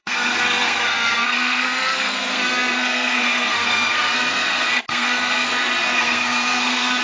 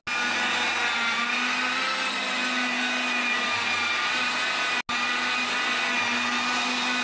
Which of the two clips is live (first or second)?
second